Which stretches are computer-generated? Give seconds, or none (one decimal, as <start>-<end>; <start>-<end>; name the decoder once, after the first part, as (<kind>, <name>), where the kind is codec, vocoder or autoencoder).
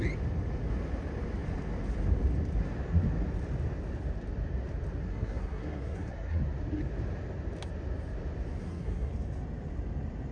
5.0-6.4 (codec, SNAC); 8.6-9.1